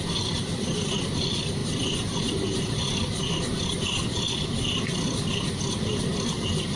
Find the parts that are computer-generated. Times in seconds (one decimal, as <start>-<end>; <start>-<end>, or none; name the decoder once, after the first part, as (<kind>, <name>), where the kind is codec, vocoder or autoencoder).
none